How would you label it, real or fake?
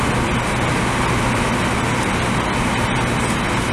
real